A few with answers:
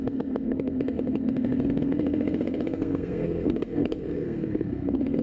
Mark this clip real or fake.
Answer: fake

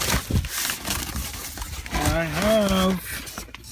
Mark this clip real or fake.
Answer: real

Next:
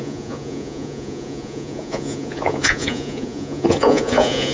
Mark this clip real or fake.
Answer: fake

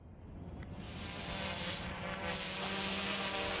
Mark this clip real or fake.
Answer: real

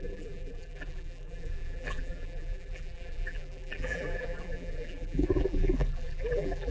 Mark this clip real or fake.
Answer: fake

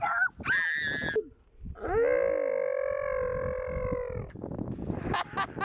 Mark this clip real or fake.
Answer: real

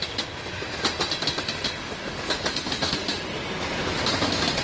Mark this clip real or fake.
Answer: real